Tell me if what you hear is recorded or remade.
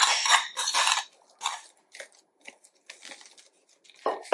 recorded